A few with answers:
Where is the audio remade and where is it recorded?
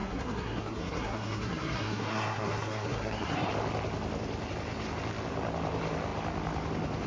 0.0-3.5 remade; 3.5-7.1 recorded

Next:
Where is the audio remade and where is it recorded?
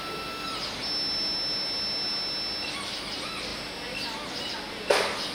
0.0-5.3 recorded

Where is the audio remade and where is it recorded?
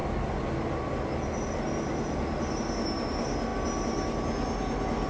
0.0-5.1 recorded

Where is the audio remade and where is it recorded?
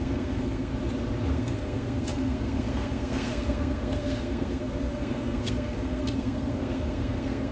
0.0-0.7 remade; 0.7-1.3 recorded; 1.3-7.5 remade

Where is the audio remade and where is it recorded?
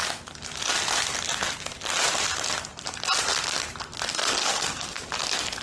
0.0-4.4 recorded; 4.4-5.1 remade; 5.1-5.6 recorded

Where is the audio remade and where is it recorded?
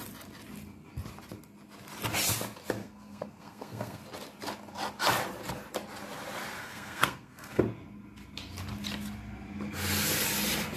0.0-2.8 recorded; 2.8-4.0 remade; 4.0-6.6 recorded; 6.6-7.6 remade; 7.6-10.8 recorded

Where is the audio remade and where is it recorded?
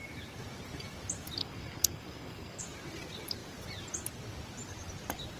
0.0-1.4 recorded; 1.4-2.6 remade; 2.6-5.4 recorded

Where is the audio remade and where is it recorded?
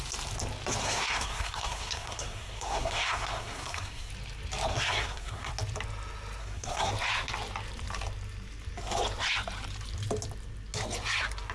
0.0-0.8 recorded; 0.8-4.1 remade; 4.1-4.7 recorded; 4.7-5.5 remade; 5.5-6.4 recorded; 6.4-6.9 remade; 6.9-11.5 recorded